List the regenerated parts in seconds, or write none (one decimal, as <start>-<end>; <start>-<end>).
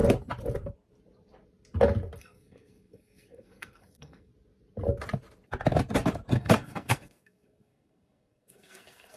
2.2-4.3; 6.3-9.2